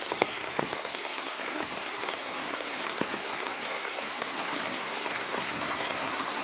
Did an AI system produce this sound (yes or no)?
yes